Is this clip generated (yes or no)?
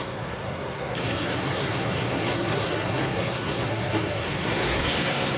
yes